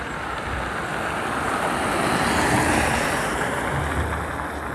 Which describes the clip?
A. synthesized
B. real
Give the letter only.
B